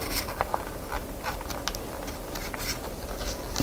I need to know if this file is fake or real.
real